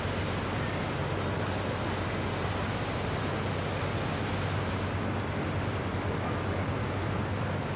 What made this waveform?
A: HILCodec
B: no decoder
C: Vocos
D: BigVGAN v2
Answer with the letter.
B